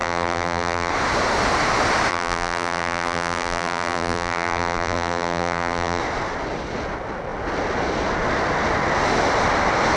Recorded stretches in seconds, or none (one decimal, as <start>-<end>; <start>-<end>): 0.9-2.1; 6.0-10.0

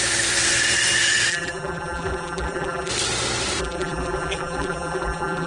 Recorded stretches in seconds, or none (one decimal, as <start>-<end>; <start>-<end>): 0.0-1.3; 2.9-3.6

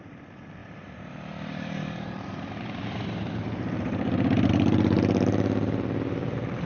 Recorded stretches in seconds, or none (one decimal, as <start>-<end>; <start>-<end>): 0.0-0.6; 4.5-6.7

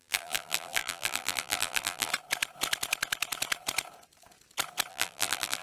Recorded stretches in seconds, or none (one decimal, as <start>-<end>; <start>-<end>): 2.1-4.9

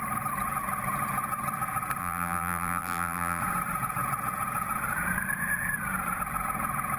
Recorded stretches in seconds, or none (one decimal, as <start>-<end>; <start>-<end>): 0.0-2.0; 3.4-7.0

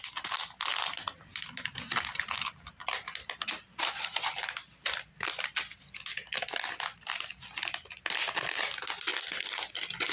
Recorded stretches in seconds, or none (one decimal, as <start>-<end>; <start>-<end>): 0.0-1.3; 5.1-10.1

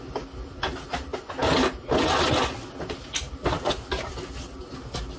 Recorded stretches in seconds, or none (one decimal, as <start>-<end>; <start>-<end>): 0.0-5.2